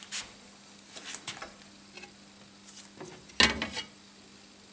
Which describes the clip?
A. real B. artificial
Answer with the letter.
A